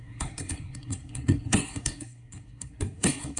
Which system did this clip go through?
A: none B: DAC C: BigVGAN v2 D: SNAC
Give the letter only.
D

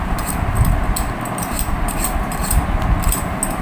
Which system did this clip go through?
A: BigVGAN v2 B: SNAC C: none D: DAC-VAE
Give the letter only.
C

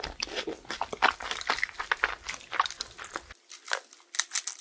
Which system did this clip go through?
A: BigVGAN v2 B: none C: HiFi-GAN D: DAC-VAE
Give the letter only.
B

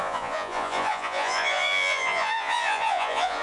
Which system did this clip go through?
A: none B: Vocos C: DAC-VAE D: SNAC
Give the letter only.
B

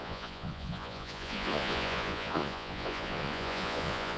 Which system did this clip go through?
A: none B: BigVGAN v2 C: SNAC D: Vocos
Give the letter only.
D